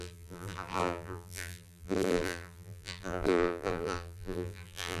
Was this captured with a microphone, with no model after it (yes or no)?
no